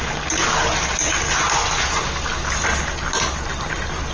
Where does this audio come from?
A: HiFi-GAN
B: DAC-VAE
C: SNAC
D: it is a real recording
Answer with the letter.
D